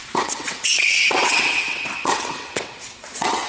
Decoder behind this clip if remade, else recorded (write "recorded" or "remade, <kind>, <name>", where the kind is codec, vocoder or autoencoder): remade, vocoder, WaveNeXt